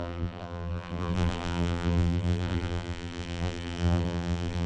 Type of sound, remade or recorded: remade